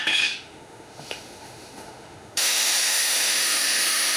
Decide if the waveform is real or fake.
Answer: fake